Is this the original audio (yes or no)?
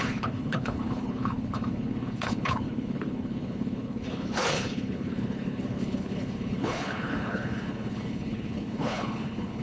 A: no